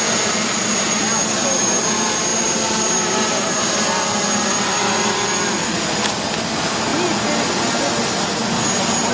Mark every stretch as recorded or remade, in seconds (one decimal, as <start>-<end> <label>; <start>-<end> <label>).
0.0-2.3 recorded; 2.3-3.8 remade; 3.8-9.1 recorded